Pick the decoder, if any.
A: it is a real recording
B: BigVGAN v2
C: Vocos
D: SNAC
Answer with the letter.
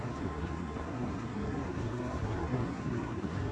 D